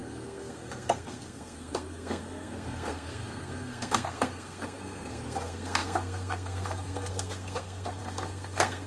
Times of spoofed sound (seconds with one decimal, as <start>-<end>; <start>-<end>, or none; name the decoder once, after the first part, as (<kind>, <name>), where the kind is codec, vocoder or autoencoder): 0.0-8.9 (codec, SNAC)

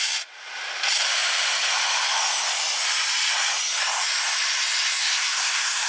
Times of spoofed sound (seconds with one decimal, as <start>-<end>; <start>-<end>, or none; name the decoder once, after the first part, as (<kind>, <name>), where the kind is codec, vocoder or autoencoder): 5.0-5.9 (codec, SNAC)

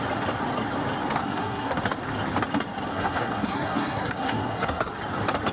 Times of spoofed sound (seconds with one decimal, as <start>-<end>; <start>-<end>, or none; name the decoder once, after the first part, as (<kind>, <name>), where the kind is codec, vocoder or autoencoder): 1.2-1.8 (codec, SNAC); 2.9-4.9

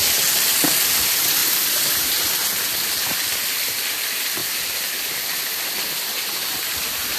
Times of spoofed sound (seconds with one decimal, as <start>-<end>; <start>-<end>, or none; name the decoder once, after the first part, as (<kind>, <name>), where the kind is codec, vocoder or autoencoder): none

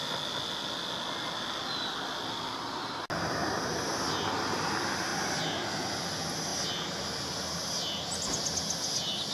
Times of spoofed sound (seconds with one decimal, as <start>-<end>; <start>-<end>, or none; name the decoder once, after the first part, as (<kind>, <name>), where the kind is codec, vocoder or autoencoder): none

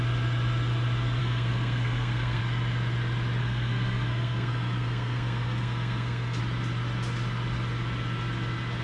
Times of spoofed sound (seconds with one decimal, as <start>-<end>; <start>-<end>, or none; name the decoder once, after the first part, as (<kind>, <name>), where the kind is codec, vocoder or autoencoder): 1.2-2.4 (codec, SNAC); 3.4-6.4

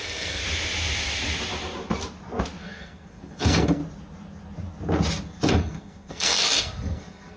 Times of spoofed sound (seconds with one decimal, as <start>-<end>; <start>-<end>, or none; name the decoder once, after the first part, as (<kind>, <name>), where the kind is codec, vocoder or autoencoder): 0.0-0.4 (codec, SNAC); 2.6-3.8; 5.5-7.4